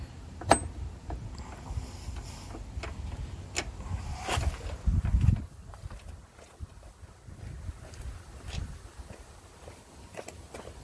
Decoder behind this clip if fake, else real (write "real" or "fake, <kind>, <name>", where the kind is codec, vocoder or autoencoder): real